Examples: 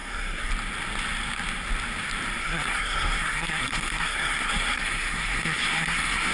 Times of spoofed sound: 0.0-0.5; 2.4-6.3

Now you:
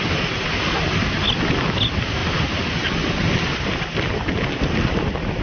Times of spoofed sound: none

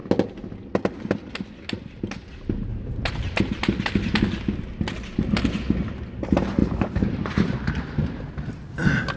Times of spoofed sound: 2.7-3.4; 6.6-8.3

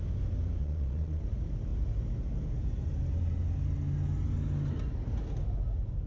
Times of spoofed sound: 0.6-1.2

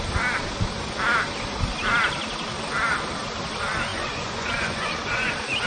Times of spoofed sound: 3.9-5.3

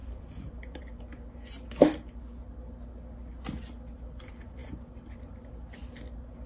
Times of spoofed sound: 0.0-0.8

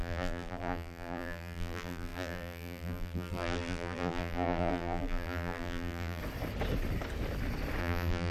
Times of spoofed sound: 0.0-6.2; 7.8-8.3